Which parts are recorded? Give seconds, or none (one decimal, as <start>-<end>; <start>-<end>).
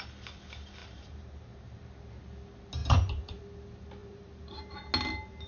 0.0-0.8; 2.2-2.8; 3.4-4.0; 4.7-5.5